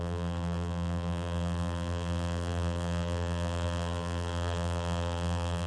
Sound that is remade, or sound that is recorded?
remade